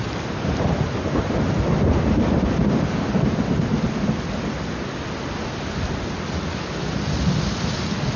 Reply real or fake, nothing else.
real